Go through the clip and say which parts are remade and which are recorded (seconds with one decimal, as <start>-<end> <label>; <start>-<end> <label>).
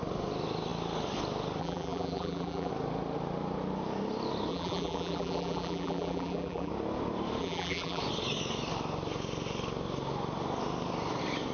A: 0.0-1.6 recorded; 1.6-2.7 remade; 2.7-4.5 recorded; 4.5-6.7 remade; 6.7-7.4 recorded; 7.4-8.0 remade; 8.0-11.5 recorded